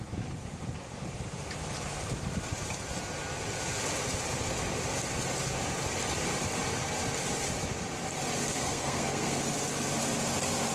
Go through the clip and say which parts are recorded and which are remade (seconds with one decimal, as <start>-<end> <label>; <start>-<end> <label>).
0.0-8.6 recorded; 8.6-9.4 remade; 9.4-10.7 recorded